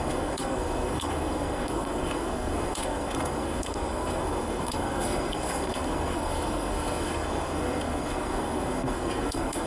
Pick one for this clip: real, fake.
fake